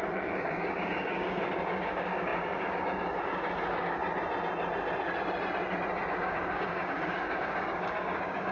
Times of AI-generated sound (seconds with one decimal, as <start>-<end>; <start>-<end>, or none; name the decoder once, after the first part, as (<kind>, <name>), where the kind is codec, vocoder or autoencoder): 0.0-4.0 (codec, DAC); 6.1-8.5